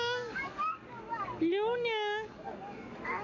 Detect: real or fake fake